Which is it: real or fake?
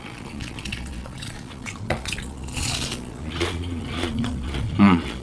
fake